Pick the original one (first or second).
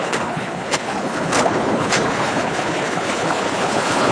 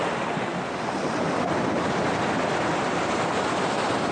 second